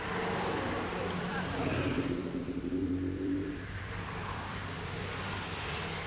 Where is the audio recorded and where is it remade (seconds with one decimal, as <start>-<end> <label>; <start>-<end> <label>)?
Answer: 0.0-1.3 recorded; 1.3-5.0 remade; 5.0-6.1 recorded